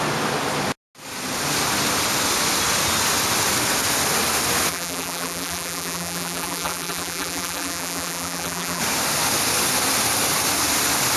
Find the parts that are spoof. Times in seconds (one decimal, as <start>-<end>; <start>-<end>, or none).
4.7-8.8

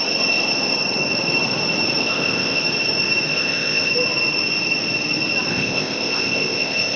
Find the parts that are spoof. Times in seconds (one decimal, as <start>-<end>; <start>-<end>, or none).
2.0-2.6; 3.3-3.9; 5.5-7.0

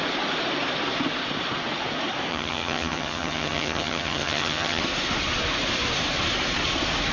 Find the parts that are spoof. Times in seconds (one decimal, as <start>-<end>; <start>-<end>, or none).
2.3-4.8

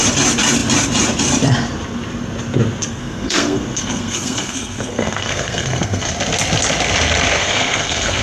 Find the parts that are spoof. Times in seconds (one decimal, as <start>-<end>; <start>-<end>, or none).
2.8-6.1; 7.4-8.2